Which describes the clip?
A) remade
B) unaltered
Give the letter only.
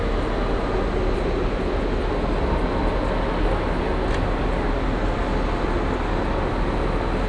B